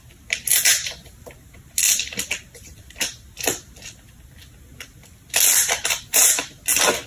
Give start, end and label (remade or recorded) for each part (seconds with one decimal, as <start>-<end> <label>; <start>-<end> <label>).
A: 0.0-0.5 recorded; 0.5-1.6 remade; 1.6-5.6 recorded; 5.6-6.3 remade; 6.3-7.1 recorded

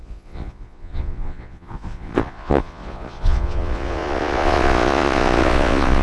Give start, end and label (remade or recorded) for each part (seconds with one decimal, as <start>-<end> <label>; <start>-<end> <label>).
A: 0.0-6.0 remade